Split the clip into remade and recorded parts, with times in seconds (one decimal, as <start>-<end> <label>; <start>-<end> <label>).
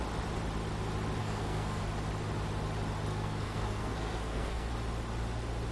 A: 0.0-1.2 recorded; 1.2-1.8 remade; 1.8-3.1 recorded; 3.1-4.7 remade; 4.7-5.7 recorded